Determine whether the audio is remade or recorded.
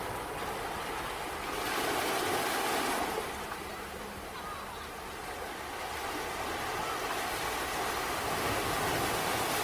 recorded